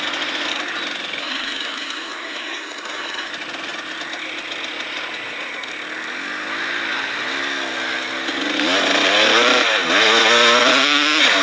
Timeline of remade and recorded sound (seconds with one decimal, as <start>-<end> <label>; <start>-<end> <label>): 0.0-1.2 recorded; 1.2-3.3 remade; 3.3-11.4 recorded